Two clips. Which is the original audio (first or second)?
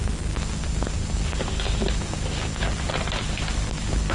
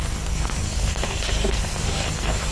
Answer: first